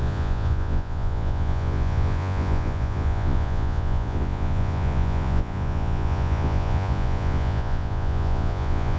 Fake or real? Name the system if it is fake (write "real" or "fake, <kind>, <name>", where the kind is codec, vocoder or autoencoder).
fake, vocoder, Vocos